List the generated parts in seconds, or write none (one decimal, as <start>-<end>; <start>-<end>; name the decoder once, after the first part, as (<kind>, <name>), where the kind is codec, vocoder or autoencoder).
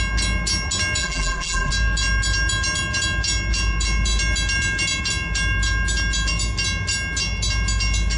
1.0-1.7 (vocoder, BigVGAN v2)